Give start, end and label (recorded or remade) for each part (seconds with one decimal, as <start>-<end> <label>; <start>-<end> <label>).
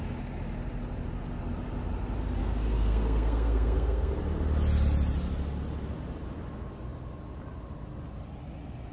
0.0-2.4 recorded; 2.4-4.1 remade; 4.1-8.9 recorded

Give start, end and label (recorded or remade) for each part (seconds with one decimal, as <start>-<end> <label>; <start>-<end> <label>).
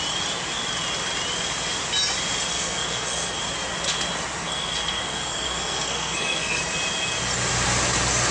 0.0-2.5 recorded; 2.5-3.4 remade; 3.4-4.4 recorded; 4.4-6.6 remade; 6.6-8.3 recorded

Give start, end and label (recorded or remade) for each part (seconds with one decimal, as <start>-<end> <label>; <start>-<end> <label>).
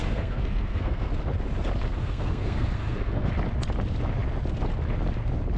0.0-1.1 remade; 1.1-1.9 recorded; 1.9-3.3 remade; 3.3-5.6 recorded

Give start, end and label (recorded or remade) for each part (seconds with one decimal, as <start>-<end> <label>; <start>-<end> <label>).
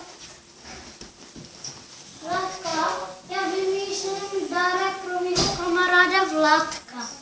0.0-7.2 recorded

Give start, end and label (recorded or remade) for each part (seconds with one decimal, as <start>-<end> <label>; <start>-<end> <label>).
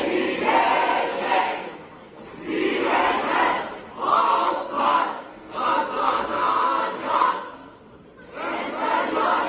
0.0-1.0 recorded; 1.0-2.3 remade; 2.3-4.1 recorded; 4.1-7.8 remade; 7.8-9.5 recorded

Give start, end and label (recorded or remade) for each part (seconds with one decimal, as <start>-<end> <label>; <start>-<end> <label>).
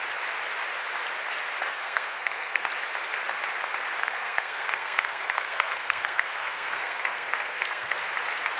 0.0-1.7 recorded; 1.7-2.7 remade; 2.7-4.0 recorded; 4.0-8.0 remade; 8.0-8.6 recorded